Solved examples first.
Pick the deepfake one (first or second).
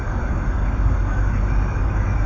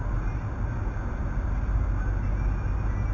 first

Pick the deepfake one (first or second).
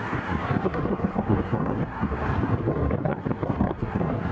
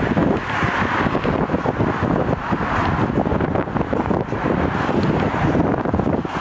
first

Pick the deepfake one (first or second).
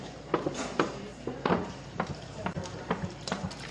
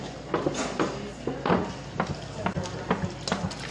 first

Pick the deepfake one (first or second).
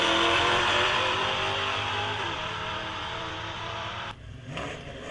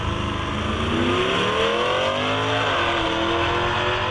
first